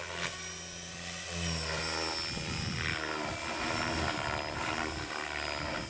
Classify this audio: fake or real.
real